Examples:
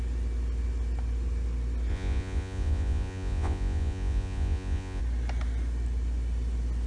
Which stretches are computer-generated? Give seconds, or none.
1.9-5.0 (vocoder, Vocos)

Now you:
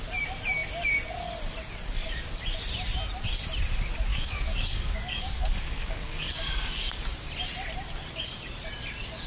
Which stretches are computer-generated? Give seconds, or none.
4.1-7.0 (codec, DAC)

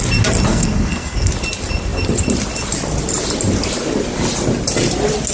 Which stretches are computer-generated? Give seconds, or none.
0.5-1.3 (codec, SNAC)

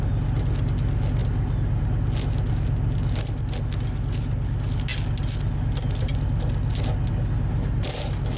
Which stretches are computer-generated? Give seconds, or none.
none

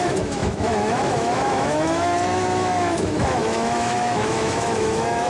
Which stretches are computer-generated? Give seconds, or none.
0.0-5.3 (autoencoder, DAC-VAE)

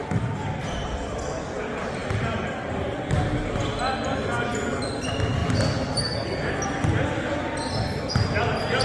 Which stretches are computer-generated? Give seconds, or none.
none

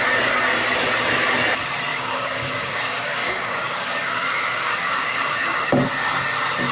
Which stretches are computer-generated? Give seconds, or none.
1.9-5.9 (codec, DAC)

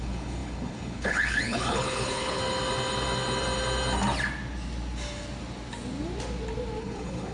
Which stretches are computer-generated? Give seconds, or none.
0.0-2.4 (codec, HILCodec); 6.8-7.3